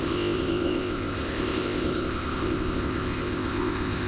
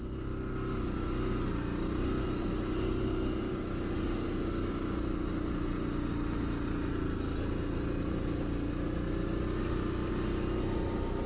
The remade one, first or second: first